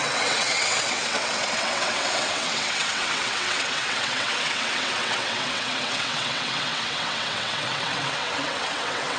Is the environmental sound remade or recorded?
remade